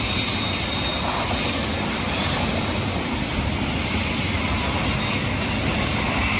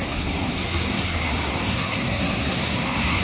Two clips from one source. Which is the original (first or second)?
first